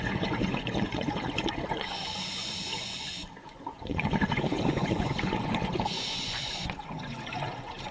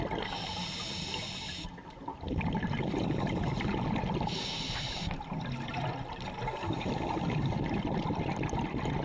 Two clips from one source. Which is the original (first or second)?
second